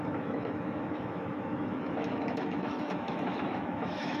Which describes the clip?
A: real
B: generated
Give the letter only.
B